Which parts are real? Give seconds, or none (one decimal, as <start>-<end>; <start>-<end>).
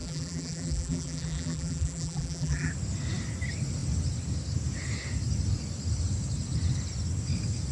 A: 2.7-7.7